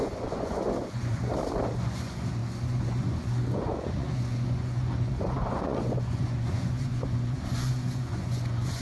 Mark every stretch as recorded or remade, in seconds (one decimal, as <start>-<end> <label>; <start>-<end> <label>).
0.0-1.3 remade; 1.3-1.8 recorded; 1.8-8.8 remade